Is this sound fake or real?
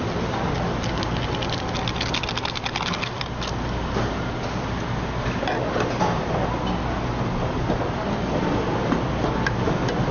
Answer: real